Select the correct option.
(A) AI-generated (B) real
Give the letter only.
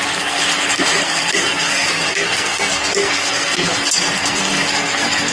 A